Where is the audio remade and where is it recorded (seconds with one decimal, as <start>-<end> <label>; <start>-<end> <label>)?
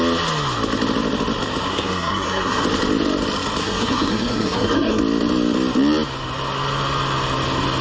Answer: 0.0-1.7 recorded; 1.7-2.6 remade; 2.6-3.6 recorded; 3.6-5.0 remade; 5.0-7.8 recorded